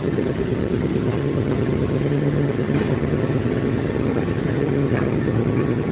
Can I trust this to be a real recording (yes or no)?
no